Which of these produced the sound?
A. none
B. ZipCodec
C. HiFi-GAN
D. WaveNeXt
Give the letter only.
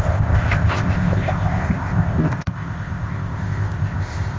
B